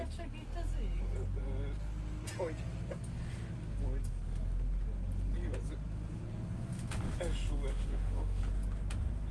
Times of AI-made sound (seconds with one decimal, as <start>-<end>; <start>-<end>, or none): 7.7-8.4